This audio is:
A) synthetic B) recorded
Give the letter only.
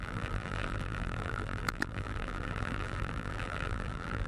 A